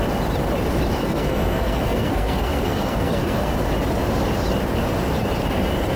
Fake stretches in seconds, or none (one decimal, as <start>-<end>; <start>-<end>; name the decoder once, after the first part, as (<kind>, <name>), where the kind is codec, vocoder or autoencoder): 1.0-3.5 (codec, SNAC)